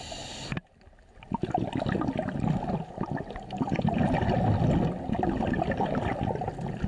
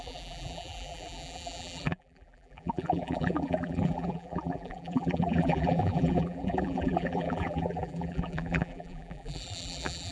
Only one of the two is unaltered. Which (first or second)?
first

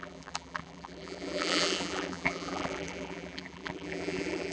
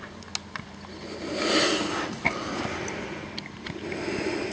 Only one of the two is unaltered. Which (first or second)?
second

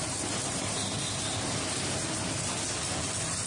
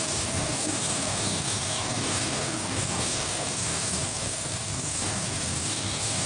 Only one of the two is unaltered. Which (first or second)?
first